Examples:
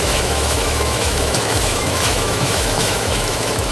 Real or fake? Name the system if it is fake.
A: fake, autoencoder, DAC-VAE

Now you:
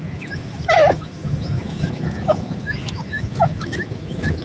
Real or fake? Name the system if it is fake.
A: fake, autoencoder, DAC-VAE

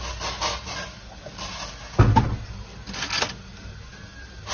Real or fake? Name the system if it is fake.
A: real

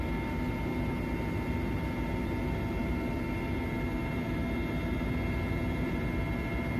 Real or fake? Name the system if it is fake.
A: real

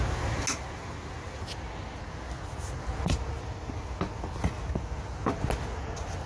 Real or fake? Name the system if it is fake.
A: real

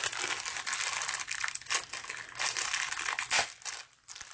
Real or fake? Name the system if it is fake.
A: real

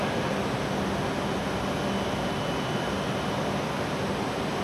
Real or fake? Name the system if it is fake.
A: real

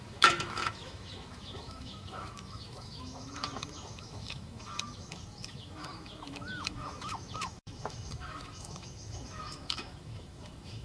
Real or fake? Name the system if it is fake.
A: fake, autoencoder, DAC-VAE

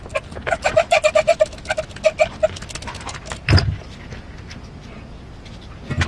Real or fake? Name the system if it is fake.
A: real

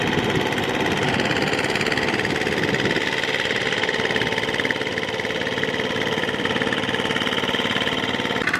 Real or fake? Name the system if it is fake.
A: real